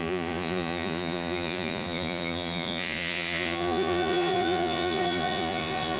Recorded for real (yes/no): no